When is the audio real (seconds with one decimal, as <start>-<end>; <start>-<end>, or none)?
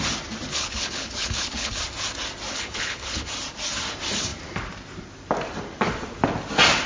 0.0-0.5; 1.8-2.5; 3.3-6.9